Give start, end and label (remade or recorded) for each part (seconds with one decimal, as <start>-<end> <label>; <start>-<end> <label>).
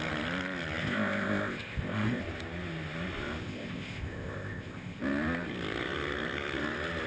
0.0-0.8 recorded; 0.8-2.2 remade; 2.2-3.4 recorded; 3.4-5.0 remade; 5.0-7.1 recorded